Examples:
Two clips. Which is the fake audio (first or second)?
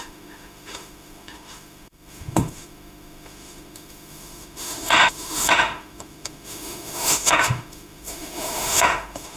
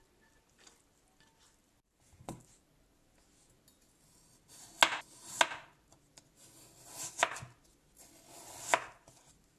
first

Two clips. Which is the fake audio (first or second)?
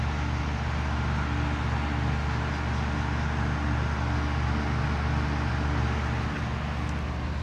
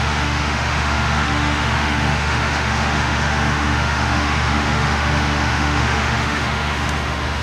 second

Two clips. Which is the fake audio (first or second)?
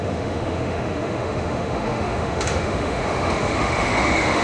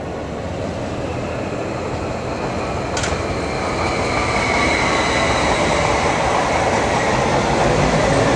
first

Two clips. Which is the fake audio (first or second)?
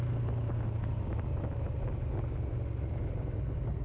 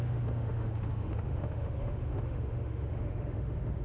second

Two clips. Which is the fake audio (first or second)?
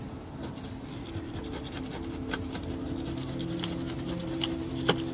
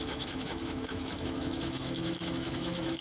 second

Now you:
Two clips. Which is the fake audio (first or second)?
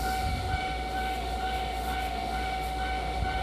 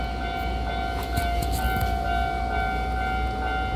first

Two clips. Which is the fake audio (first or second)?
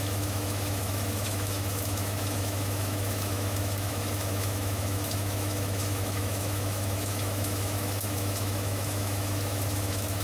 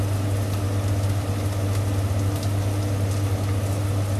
first